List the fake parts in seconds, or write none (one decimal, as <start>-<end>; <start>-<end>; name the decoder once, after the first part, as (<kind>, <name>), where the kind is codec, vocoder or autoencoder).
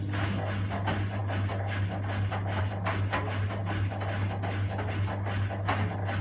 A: none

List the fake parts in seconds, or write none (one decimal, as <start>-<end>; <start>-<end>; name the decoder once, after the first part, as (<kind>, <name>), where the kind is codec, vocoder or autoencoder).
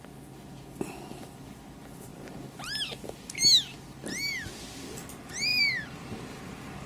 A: 5.5-6.4 (vocoder, BigVGAN v2)